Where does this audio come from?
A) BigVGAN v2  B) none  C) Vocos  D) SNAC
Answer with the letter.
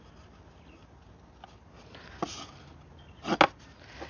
B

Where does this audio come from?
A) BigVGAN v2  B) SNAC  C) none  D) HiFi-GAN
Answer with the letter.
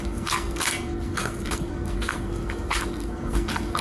B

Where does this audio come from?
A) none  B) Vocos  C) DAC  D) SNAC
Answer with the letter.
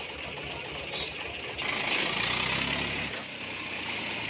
A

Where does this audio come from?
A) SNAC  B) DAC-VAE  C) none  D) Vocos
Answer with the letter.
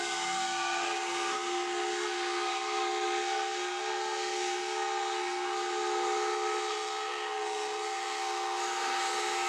A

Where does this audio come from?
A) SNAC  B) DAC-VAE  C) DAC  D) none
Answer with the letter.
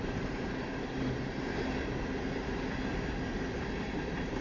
D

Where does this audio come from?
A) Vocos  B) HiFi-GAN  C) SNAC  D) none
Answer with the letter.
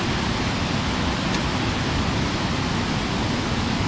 D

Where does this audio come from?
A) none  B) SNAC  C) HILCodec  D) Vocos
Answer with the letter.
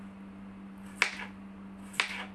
A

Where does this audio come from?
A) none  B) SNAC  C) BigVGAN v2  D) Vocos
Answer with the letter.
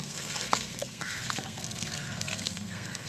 B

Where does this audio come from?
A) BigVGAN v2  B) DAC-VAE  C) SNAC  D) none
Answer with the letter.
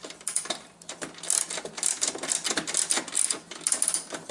D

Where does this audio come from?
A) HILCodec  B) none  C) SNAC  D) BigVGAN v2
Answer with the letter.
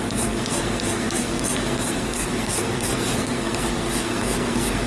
C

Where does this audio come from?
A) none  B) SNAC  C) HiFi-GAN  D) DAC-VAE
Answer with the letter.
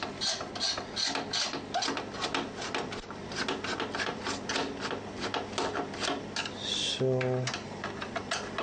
A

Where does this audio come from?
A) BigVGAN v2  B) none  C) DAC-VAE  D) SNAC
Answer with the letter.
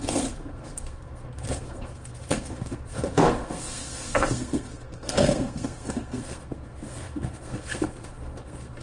D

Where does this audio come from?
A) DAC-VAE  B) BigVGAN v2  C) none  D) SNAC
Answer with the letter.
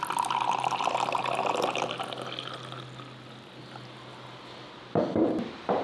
C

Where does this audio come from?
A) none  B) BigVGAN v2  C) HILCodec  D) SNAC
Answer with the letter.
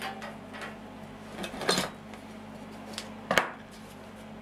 A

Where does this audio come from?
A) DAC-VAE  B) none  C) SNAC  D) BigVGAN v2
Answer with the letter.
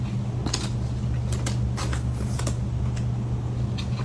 B